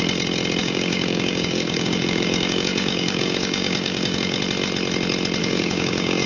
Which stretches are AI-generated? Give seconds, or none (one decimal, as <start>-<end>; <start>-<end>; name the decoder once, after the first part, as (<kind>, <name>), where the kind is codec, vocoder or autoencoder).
0.6-4.4 (codec, DAC); 5.4-6.3